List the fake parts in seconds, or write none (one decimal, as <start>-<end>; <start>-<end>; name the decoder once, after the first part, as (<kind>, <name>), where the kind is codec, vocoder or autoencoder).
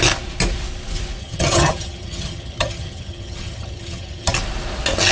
1.2-4.3 (vocoder, HiFi-GAN)